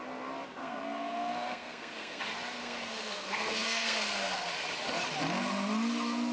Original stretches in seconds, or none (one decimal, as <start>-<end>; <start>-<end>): 0.0-0.6; 2.2-2.6; 4.5-6.3